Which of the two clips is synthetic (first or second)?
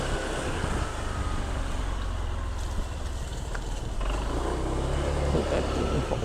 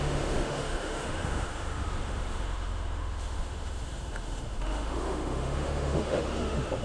second